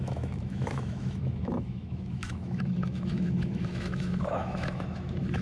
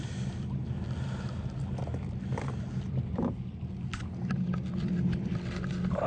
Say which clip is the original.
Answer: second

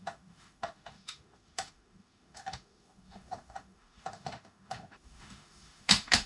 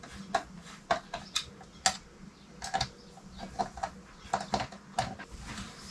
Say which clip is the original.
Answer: second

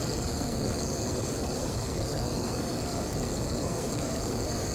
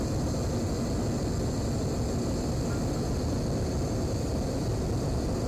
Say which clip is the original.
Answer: second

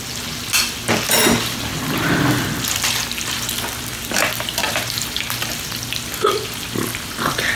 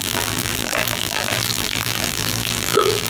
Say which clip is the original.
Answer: first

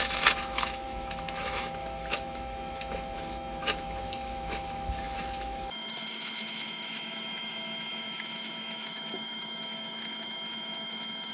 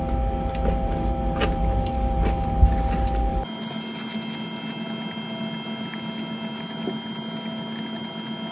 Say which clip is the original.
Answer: second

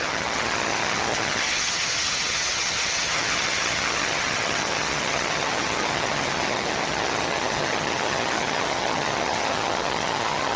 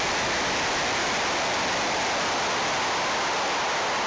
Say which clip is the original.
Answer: second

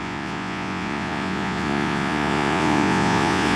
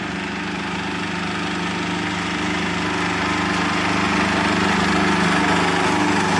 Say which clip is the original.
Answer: second